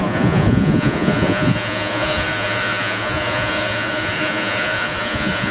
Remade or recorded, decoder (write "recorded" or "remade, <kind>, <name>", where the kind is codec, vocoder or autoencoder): remade, vocoder, Vocos